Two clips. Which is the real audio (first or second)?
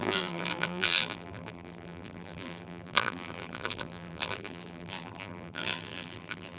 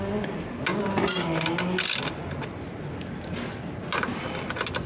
second